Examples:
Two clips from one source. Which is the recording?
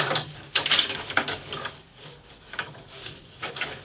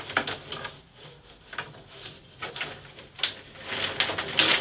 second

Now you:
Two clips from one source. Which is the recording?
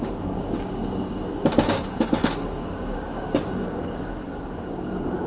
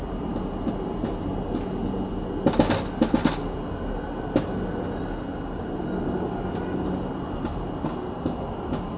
second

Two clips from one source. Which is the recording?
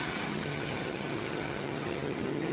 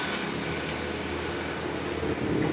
second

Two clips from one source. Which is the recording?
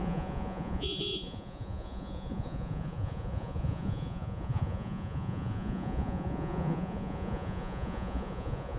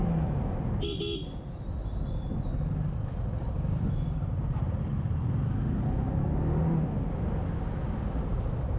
second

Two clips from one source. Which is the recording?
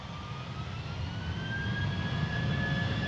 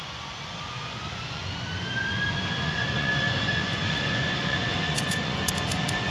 first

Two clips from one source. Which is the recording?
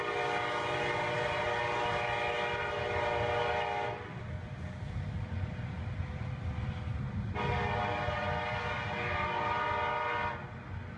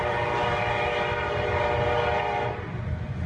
first